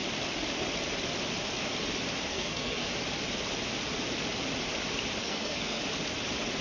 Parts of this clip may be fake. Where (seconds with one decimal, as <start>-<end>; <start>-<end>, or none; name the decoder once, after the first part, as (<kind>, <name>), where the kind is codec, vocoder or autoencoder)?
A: 2.3-2.9 (codec, SNAC); 5.2-5.8

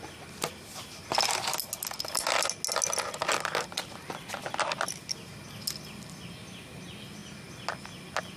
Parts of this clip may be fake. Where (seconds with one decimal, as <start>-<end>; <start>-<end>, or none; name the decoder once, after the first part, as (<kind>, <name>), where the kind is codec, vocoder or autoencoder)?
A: none

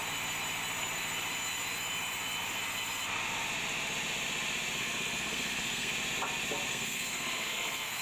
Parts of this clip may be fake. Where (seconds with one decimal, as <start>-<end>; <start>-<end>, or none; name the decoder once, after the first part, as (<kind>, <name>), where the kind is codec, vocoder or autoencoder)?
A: 4.8-5.9 (codec, SNAC); 6.7-8.0